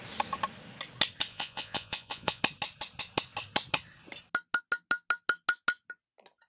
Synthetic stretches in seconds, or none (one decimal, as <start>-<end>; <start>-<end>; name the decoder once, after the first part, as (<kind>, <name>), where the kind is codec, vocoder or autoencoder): 1.3-2.4 (vocoder, Vocos)